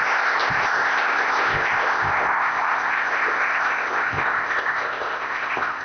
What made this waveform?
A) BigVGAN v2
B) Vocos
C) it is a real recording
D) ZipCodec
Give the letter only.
D